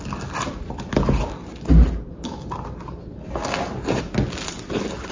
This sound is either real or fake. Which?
real